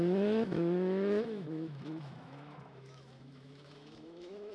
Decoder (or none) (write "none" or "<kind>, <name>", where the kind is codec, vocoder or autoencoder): autoencoder, DAC-VAE